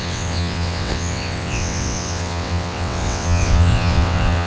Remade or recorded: remade